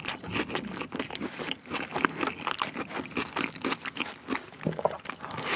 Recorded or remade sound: recorded